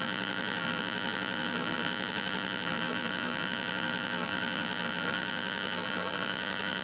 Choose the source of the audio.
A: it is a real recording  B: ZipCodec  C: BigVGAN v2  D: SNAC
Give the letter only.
C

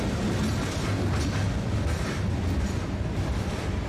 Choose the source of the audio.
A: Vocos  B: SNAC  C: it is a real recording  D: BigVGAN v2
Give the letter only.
C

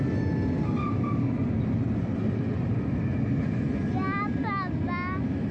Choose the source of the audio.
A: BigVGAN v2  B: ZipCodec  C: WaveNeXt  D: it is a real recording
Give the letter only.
D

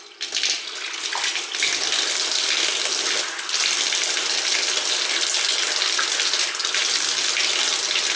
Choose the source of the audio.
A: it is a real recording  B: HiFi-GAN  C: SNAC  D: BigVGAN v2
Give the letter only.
A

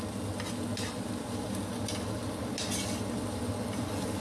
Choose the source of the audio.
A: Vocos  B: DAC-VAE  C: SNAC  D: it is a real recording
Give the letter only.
D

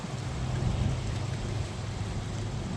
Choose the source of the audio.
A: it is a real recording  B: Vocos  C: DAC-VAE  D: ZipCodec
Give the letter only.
A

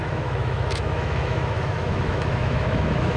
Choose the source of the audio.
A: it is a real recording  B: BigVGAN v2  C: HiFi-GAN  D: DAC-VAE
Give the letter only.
D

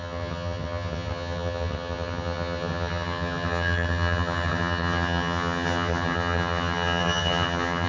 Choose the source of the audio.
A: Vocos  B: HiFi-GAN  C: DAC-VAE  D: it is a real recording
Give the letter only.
B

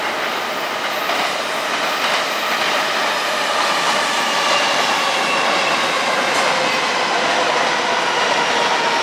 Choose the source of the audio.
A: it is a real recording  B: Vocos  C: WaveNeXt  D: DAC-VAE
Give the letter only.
A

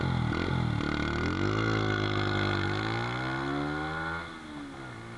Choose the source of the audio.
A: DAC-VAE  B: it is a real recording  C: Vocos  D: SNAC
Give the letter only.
B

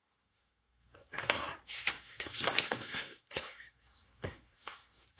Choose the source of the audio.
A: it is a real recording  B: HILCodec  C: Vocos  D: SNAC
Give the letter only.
D